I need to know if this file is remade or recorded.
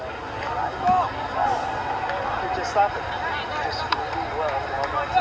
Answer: recorded